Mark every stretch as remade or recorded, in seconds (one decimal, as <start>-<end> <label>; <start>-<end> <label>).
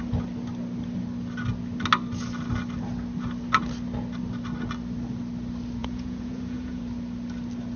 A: 0.0-5.8 recorded; 5.8-6.8 remade; 6.8-7.8 recorded